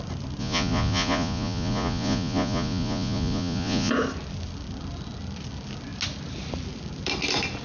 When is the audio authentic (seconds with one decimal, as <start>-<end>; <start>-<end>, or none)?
0.0-0.4; 3.9-7.6